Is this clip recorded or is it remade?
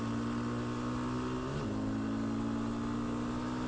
recorded